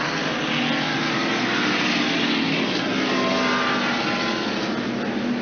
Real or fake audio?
real